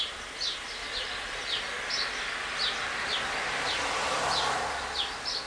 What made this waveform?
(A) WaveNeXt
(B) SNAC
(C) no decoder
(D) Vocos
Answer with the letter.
C